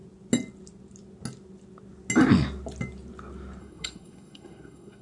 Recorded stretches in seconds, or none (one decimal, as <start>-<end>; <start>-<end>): 0.0-3.6